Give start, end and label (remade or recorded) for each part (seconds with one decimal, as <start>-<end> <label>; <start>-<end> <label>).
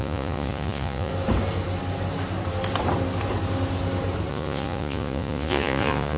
0.0-1.1 remade; 1.1-4.3 recorded; 4.3-6.2 remade